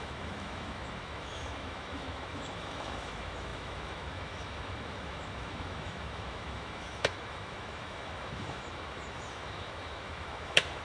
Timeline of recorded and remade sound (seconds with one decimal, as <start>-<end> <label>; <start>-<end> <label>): 0.0-10.8 remade